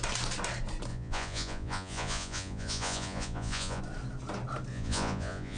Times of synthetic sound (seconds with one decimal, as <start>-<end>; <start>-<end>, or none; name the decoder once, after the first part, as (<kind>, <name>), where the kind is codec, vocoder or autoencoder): 0.9-3.8 (vocoder, Vocos); 4.7-5.6